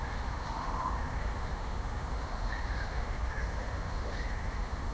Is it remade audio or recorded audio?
remade